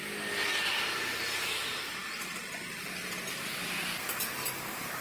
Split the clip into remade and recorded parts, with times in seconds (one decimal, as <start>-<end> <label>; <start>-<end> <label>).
0.0-5.0 recorded